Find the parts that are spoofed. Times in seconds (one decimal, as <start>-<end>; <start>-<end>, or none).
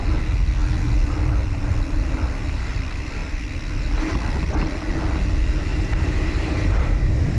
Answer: 5.7-7.4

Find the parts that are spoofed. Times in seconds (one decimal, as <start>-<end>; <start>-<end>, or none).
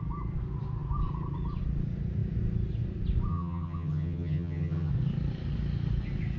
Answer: 3.3-4.9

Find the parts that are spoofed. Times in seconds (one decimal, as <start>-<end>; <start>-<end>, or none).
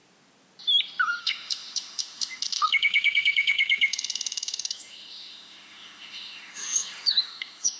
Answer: 1.2-7.8